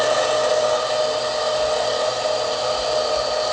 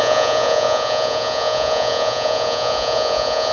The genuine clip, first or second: first